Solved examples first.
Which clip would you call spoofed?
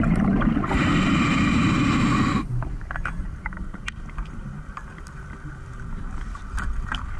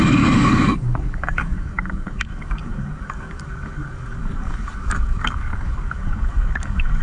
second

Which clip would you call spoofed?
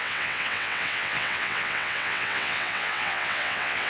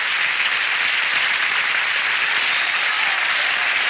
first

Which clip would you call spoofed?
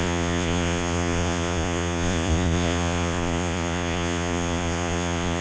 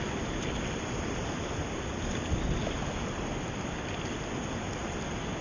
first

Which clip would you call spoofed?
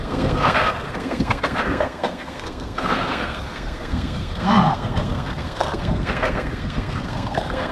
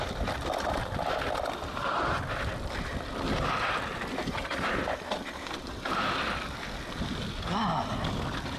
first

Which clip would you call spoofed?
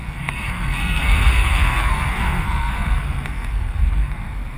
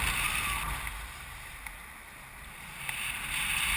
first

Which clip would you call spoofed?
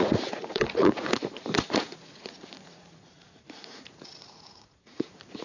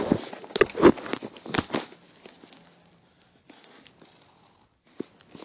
first